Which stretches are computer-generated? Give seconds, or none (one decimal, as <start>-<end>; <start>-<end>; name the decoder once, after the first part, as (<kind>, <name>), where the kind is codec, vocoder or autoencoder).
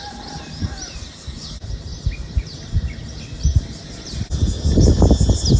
none